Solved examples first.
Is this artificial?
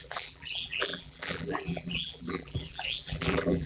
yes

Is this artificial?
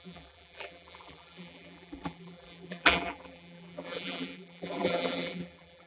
yes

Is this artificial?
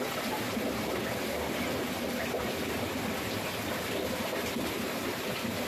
yes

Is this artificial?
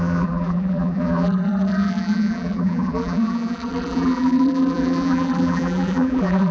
yes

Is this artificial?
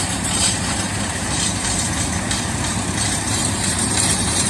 yes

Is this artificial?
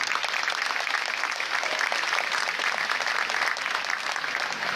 no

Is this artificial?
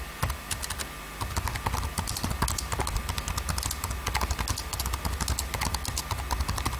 no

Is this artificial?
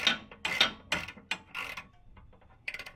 no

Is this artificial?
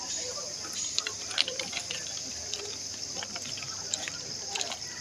yes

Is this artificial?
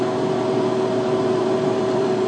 yes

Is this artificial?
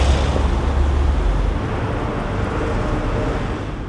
no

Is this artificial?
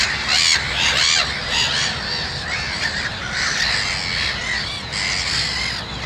no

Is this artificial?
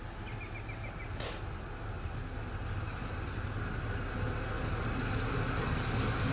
no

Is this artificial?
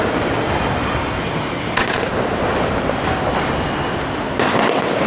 no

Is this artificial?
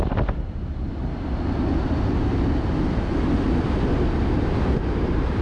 no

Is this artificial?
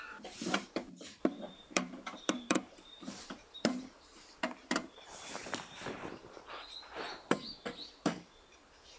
yes